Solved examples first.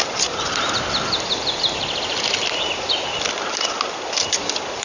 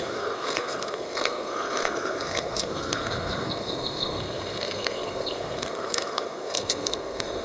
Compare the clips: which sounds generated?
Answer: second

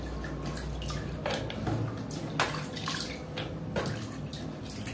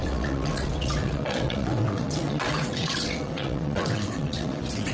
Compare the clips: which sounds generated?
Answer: second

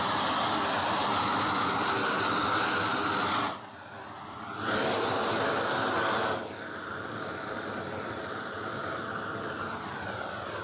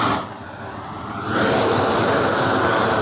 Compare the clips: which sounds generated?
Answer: second